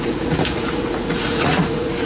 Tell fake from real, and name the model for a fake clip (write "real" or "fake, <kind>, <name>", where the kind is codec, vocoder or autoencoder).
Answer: fake, vocoder, Vocos